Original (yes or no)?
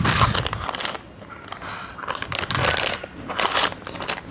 yes